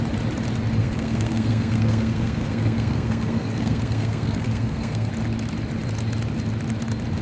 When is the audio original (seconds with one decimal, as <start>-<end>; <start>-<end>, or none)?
0.0-0.8; 5.1-7.2